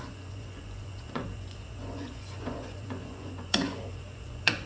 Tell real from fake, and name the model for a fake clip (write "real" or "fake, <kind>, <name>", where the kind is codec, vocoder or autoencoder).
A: fake, vocoder, Vocos